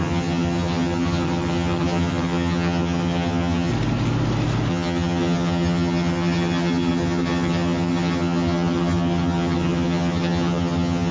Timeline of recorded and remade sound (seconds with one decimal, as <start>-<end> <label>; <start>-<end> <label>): 0.0-3.7 remade; 3.7-4.7 recorded; 4.7-11.1 remade